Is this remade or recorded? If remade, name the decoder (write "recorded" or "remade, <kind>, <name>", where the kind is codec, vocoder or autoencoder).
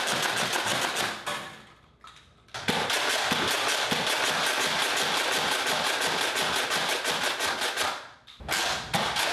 recorded